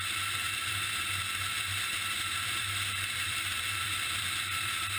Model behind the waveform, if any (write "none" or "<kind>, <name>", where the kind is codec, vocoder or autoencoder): vocoder, BigVGAN v2